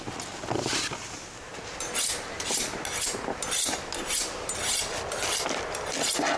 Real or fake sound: real